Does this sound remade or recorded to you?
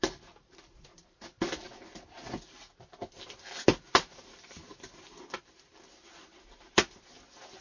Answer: recorded